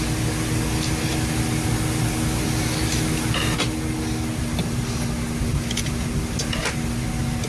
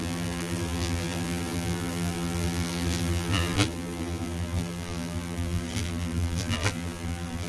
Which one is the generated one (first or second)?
second